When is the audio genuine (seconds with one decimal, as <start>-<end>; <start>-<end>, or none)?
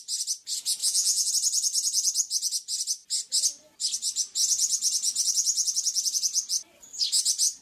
0.0-0.8; 1.3-7.6